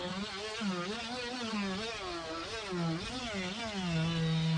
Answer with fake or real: real